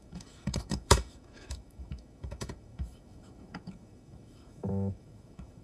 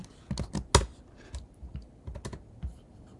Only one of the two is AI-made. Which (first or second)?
first